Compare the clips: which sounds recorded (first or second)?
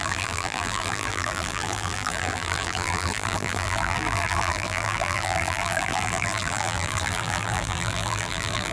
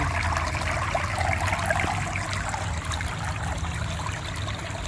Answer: second